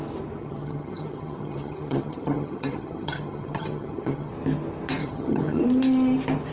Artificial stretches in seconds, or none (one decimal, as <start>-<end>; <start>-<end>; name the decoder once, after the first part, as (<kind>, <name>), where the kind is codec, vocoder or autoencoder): 0.4-4.3 (vocoder, HiFi-GAN); 5.0-5.6